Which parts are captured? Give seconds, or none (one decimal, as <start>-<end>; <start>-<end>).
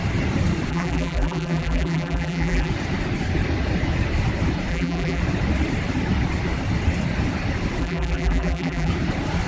0.0-0.7; 2.7-4.7; 5.2-7.8; 8.9-9.5